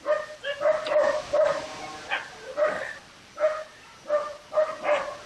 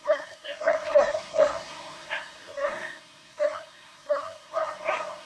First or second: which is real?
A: first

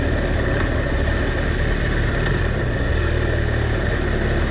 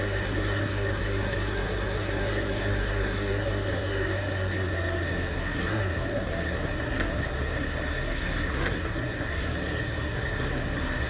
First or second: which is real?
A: first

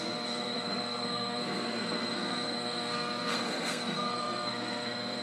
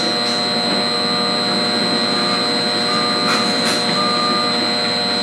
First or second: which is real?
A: second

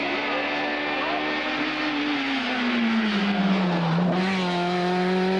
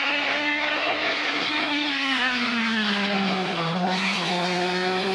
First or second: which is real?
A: first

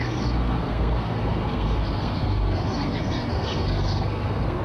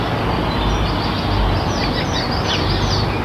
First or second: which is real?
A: second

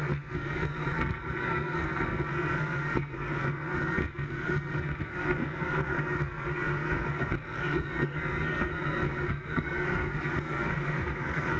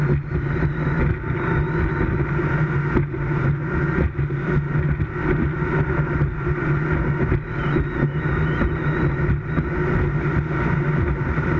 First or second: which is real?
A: second